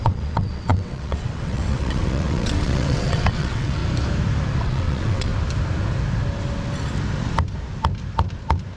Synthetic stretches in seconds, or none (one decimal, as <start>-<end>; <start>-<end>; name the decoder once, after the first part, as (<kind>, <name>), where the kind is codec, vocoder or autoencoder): 0.0-3.8 (vocoder, WaveNeXt); 4.6-5.3